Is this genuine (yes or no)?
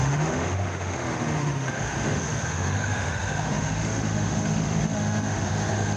no